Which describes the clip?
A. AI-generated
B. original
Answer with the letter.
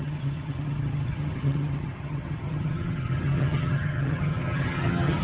A